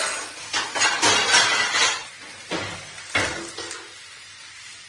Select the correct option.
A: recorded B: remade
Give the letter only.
A